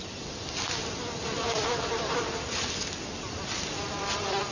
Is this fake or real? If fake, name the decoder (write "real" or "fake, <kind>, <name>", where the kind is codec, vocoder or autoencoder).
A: real